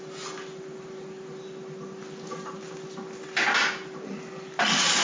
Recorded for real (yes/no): yes